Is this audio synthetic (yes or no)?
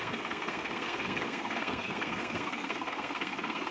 yes